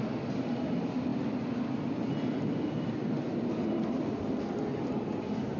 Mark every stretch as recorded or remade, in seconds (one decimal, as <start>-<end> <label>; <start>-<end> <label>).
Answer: 0.0-5.6 recorded